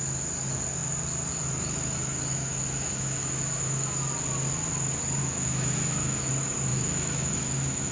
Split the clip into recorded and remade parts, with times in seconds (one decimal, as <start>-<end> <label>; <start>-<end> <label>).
0.0-2.3 recorded; 2.3-4.0 remade; 4.0-5.2 recorded; 5.2-6.3 remade; 6.3-6.7 recorded; 6.7-7.9 remade